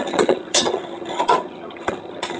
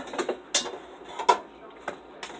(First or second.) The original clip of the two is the second